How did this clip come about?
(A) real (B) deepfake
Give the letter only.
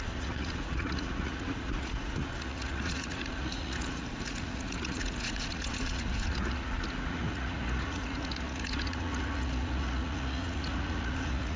B